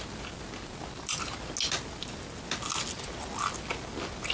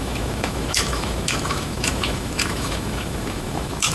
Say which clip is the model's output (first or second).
second